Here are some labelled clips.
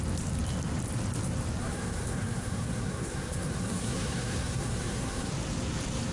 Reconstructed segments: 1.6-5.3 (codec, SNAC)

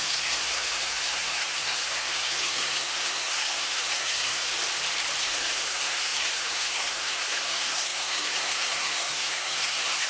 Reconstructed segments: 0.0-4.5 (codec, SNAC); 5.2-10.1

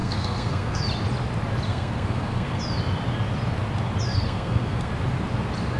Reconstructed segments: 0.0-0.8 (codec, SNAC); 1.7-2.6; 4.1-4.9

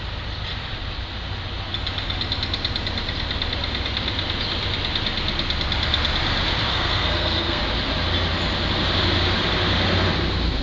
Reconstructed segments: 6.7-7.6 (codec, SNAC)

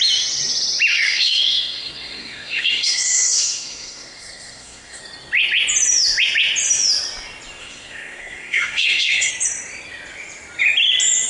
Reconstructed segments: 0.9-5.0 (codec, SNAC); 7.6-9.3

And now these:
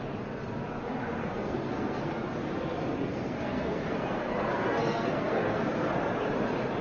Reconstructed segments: 1.2-2.1 (codec, SNAC); 3.1-5.9

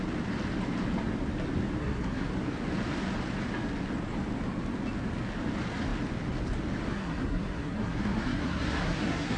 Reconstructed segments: 1.8-2.3 (codec, SNAC); 6.9-9.4

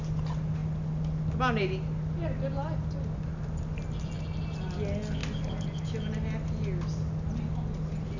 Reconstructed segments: none